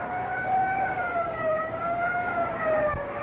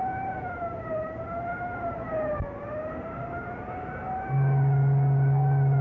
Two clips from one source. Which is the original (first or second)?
second